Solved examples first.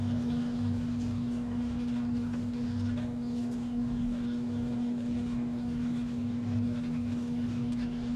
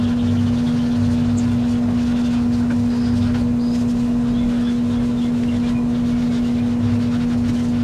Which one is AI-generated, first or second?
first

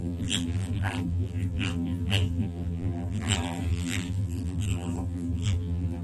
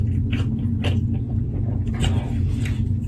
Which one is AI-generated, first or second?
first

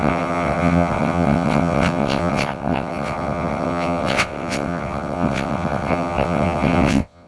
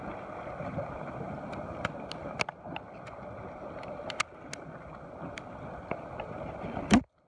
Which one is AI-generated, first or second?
first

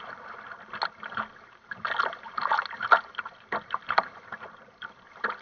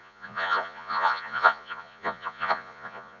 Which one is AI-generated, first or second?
second